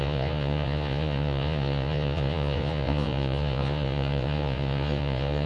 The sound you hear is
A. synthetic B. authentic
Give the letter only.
A